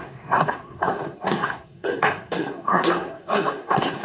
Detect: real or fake fake